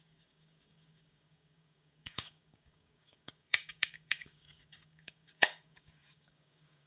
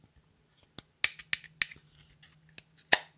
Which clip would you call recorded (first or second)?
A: second